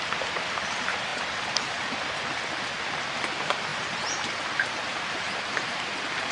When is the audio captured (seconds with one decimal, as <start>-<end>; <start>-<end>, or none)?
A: 0.0-6.3